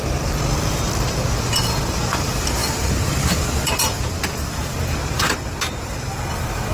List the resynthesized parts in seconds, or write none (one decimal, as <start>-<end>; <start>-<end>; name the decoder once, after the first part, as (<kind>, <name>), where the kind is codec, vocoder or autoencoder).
none